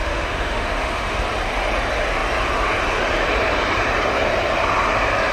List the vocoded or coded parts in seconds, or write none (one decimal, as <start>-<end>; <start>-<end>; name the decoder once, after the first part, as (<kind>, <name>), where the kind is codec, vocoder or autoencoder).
0.0-1.2 (autoencoder, DAC-VAE)